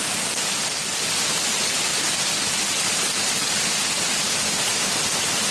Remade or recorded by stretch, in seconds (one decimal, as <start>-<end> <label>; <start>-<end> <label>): 0.0-5.5 recorded